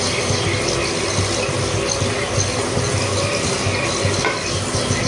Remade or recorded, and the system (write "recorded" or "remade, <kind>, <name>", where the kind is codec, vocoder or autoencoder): recorded